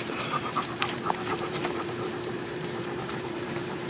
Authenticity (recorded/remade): remade